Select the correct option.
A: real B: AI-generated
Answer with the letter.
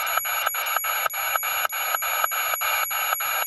A